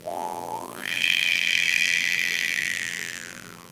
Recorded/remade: remade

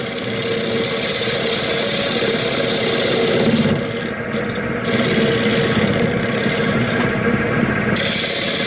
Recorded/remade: recorded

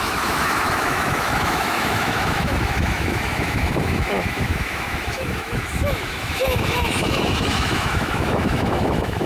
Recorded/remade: remade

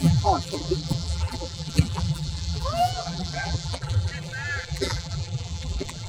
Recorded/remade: remade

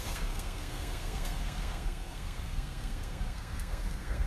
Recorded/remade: remade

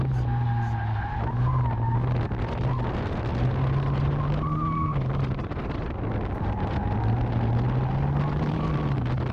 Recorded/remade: recorded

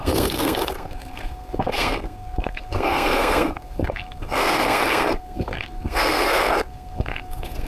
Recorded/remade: remade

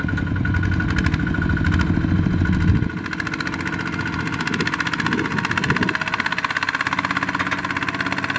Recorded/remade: recorded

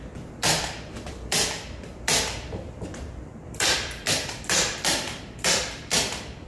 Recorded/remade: remade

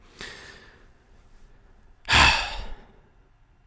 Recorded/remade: remade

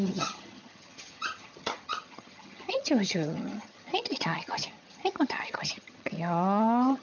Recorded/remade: remade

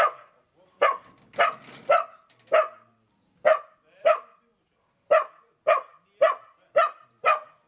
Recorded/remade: recorded